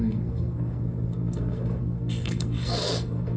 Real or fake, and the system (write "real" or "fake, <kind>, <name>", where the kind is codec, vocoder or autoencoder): fake, codec, SNAC